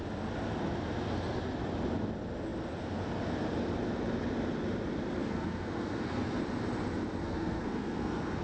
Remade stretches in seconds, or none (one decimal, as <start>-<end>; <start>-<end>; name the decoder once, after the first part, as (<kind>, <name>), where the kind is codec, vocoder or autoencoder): 5.2-6.4 (codec, SNAC); 7.2-8.4